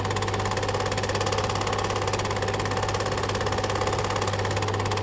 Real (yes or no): yes